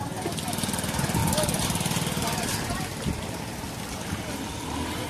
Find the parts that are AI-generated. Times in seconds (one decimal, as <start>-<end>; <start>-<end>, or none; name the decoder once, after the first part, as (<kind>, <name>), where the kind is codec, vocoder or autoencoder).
none